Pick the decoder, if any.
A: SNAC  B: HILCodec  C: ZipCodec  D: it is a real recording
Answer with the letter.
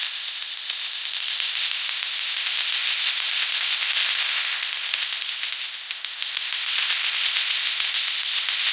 C